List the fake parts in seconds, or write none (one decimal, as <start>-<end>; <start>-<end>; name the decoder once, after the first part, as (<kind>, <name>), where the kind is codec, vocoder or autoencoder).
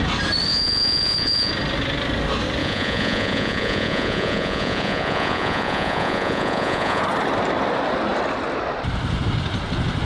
0.5-1.5 (vocoder, Vocos); 2.6-7.0